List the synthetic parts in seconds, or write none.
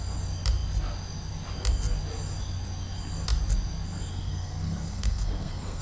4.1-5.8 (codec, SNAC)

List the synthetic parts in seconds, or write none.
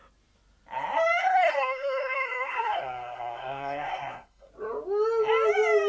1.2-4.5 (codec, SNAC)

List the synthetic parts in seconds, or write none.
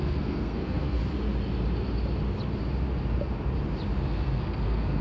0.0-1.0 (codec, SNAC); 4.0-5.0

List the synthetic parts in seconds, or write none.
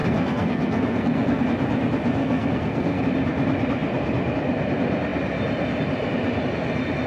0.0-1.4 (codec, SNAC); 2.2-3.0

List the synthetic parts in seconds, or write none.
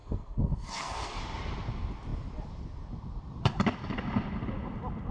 0.0-1.2 (codec, SNAC)